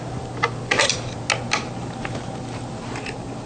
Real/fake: real